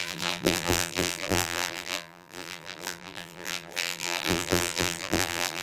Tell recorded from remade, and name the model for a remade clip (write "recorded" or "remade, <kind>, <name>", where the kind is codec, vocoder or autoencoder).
remade, vocoder, BigVGAN v2